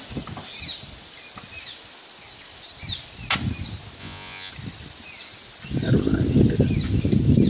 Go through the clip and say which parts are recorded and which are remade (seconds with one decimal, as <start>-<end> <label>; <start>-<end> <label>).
0.0-4.0 recorded; 4.0-4.5 remade; 4.5-7.5 recorded